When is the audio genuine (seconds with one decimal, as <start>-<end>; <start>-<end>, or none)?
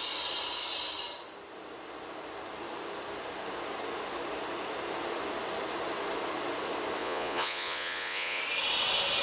0.0-7.0; 8.4-9.2